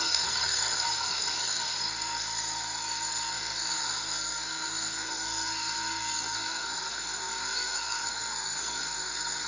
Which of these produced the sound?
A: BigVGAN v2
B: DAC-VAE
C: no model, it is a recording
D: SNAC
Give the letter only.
D